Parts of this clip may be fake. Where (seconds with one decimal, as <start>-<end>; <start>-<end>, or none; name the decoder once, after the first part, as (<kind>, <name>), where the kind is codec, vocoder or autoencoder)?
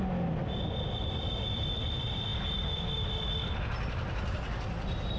0.0-2.3 (vocoder, BigVGAN v2); 3.4-5.2